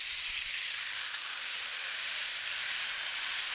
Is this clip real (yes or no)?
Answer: no